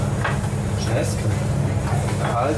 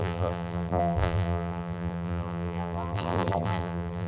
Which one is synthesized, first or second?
second